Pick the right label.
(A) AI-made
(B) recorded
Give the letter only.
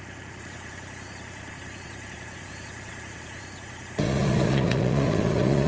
A